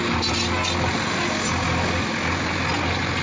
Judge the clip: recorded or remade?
recorded